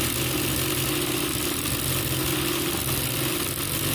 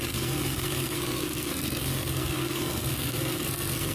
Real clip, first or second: first